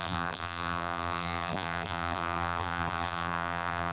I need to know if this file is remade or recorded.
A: remade